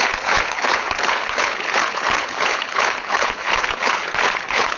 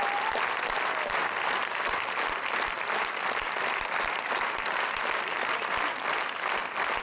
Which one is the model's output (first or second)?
first